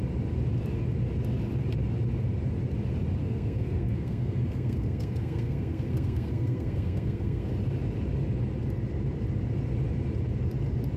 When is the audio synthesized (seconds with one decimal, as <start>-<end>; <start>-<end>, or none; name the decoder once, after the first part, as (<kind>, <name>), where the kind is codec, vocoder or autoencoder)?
3.2-7.5 (codec, SNAC)